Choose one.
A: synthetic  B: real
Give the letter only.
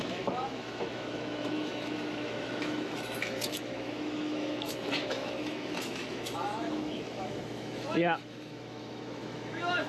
A